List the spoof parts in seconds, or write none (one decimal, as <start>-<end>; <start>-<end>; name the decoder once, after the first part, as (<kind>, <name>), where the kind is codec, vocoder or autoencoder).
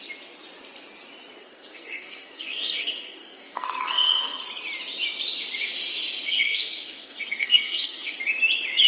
1.4-4.4 (codec, SNAC); 6.3-8.2